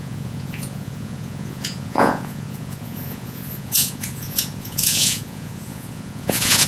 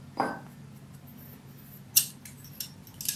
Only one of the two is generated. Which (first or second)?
first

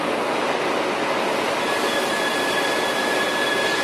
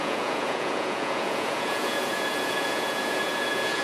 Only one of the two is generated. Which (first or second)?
second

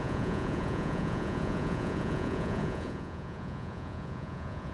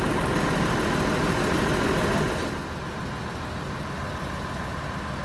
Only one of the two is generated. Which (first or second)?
first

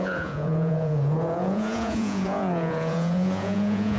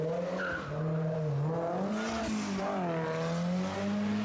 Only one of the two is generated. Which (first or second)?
first